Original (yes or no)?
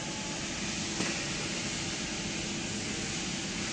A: yes